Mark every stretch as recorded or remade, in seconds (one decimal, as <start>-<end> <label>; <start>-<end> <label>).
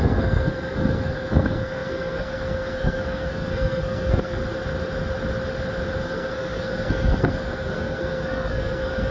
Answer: 0.0-4.4 remade; 4.4-6.0 recorded; 6.0-9.1 remade